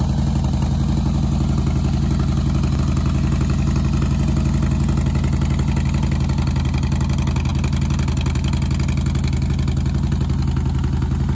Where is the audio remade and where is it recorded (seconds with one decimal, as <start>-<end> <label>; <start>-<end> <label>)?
0.0-11.3 recorded